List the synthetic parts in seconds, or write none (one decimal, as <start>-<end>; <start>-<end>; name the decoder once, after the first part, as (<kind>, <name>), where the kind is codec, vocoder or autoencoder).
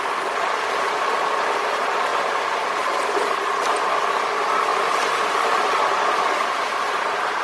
none